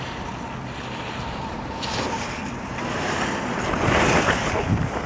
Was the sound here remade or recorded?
recorded